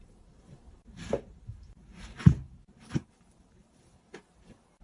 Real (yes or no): yes